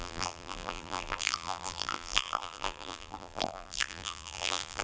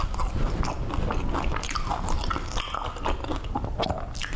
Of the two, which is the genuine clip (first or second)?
second